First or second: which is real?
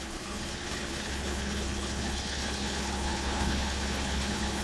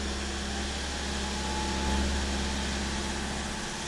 second